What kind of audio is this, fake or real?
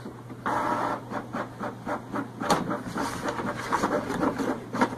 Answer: real